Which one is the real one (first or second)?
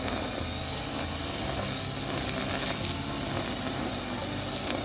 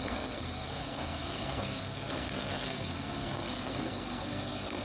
first